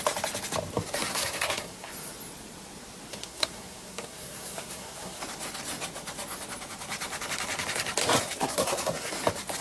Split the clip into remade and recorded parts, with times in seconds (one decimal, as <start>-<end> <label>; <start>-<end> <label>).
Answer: 0.0-1.1 recorded; 1.1-1.9 remade; 1.9-3.1 recorded; 3.1-5.2 remade; 5.2-8.0 recorded; 8.0-9.1 remade; 9.1-9.6 recorded